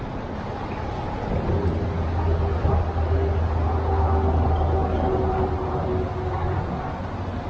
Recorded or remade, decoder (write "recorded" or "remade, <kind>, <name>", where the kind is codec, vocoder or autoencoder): recorded